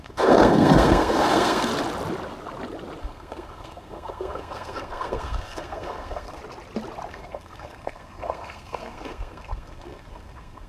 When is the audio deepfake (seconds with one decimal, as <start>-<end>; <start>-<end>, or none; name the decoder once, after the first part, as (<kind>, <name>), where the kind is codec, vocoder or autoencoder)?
0.0-1.7 (codec, SNAC); 3.0-6.4; 7.1-10.7